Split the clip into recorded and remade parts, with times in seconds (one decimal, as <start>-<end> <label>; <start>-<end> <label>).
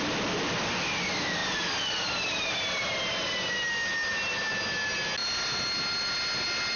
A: 0.0-1.4 recorded; 1.4-2.5 remade; 2.5-6.8 recorded